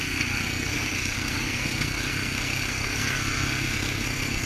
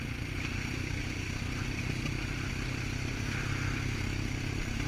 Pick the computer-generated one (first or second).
first